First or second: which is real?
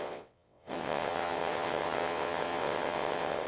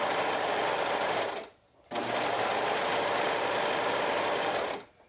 second